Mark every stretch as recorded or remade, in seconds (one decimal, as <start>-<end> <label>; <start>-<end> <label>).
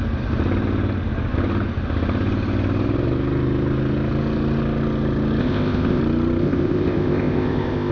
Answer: 0.0-5.4 recorded; 5.4-6.0 remade; 6.0-6.4 recorded; 6.4-7.9 remade